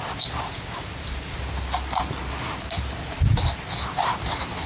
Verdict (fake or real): real